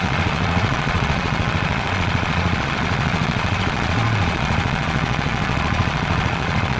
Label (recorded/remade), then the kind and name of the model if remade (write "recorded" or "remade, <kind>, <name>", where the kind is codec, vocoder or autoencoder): remade, vocoder, Vocos